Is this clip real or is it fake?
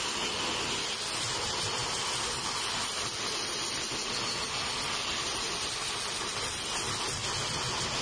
real